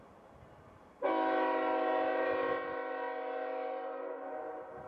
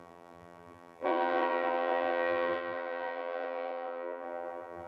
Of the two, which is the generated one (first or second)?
second